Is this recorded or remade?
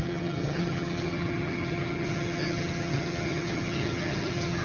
remade